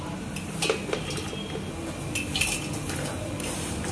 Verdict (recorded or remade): recorded